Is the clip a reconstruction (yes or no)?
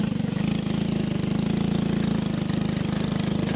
no